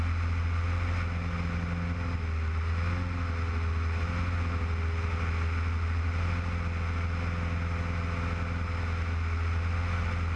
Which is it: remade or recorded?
recorded